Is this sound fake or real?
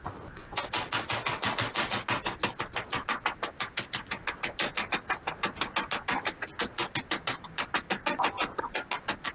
real